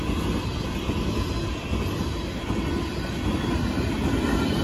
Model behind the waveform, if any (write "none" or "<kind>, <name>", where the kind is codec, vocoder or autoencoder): none